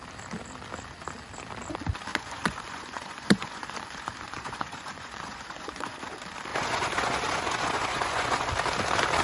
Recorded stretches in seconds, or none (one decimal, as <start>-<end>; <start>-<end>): 0.0-2.1; 6.0-6.5; 8.5-9.2